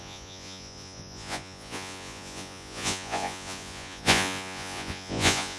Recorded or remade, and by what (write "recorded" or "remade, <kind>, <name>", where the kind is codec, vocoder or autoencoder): remade, vocoder, Vocos